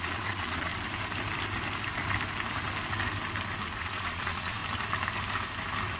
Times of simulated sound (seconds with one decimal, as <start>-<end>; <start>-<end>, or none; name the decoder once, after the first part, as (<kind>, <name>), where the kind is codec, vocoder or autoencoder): 0.0-0.7 (vocoder, Vocos); 3.8-4.6